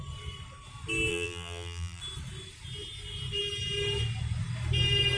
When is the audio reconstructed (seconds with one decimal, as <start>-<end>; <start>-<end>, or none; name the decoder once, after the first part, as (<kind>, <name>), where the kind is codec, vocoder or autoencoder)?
1.1-2.0 (vocoder, BigVGAN v2)